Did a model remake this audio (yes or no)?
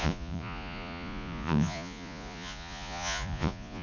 yes